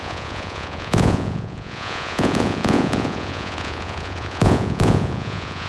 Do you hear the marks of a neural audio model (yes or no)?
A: yes